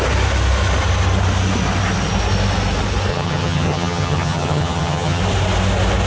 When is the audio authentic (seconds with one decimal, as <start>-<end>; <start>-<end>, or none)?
0.0-3.1; 5.2-6.1